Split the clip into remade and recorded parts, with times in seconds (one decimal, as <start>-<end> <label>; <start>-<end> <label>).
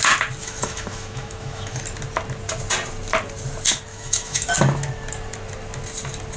0.0-0.4 recorded; 0.4-1.8 remade; 1.8-3.9 recorded; 3.9-4.5 remade; 4.5-6.4 recorded